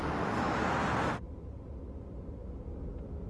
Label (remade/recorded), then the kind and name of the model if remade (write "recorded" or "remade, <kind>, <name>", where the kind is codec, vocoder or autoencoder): recorded